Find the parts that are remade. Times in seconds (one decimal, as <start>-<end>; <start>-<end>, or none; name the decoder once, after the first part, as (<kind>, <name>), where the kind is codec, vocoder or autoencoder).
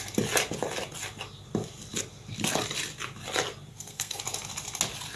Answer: 3.7-4.2 (codec, SNAC)